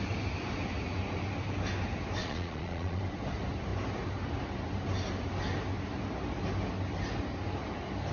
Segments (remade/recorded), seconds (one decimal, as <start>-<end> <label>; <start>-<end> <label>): 0.0-2.2 recorded; 2.2-3.0 remade; 3.0-8.1 recorded